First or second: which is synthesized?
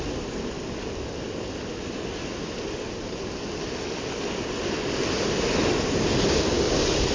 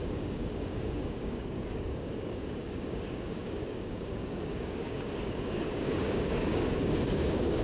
second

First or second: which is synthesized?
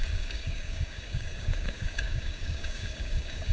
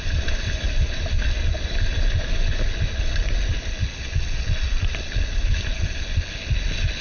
first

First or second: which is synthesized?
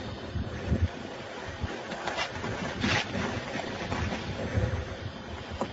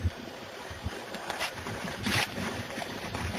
second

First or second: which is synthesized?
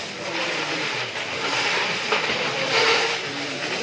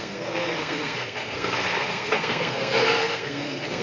second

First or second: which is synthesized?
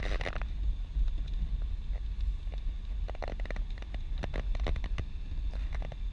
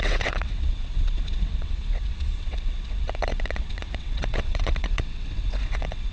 second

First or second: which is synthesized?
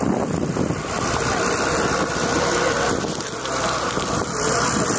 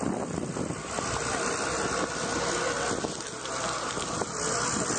first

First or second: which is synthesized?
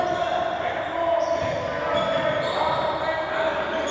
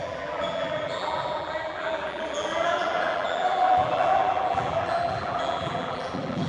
second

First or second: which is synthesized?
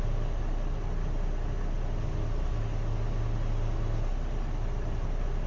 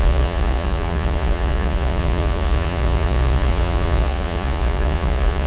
second